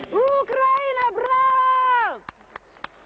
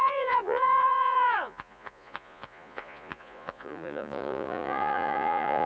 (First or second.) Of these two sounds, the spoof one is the second